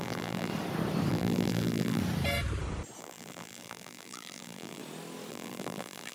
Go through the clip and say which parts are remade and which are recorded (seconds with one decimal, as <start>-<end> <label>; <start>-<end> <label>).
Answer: 0.0-0.5 remade; 0.5-1.1 recorded; 1.1-2.0 remade; 2.0-3.0 recorded; 3.0-4.8 remade; 4.8-5.3 recorded; 5.3-6.1 remade